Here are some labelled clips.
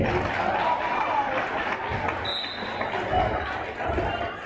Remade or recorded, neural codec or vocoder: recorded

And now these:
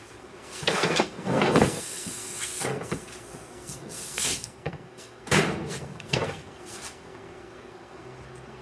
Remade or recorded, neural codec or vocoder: remade, codec, SNAC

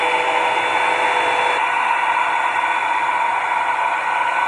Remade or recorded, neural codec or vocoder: recorded